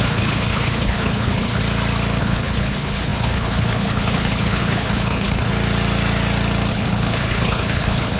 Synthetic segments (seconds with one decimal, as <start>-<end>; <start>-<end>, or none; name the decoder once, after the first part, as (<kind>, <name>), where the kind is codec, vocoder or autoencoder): 0.0-1.6 (codec, HILCodec); 2.2-5.5; 6.7-8.2